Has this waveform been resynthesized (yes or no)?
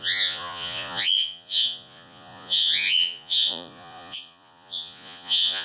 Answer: yes